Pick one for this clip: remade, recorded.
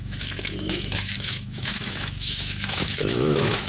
remade